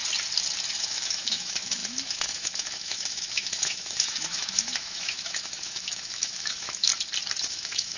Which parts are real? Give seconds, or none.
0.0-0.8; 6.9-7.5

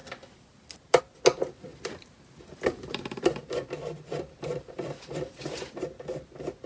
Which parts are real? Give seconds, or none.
1.0-1.7; 5.7-6.7

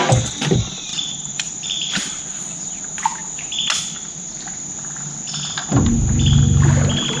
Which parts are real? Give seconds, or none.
0.0-0.9; 2.2-7.2

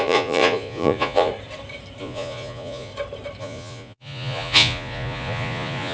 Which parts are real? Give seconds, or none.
1.3-2.0; 2.9-3.4